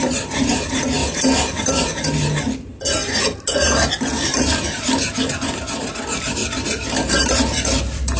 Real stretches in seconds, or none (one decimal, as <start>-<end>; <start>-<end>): 1.0-4.3; 6.4-7.5